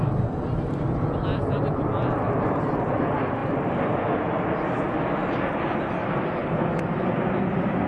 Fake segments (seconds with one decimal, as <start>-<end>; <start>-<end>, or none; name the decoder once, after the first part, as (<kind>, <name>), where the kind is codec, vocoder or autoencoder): 1.3-3.0 (vocoder, BigVGAN v2)